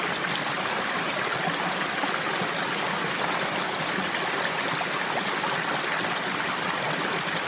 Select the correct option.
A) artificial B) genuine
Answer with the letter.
B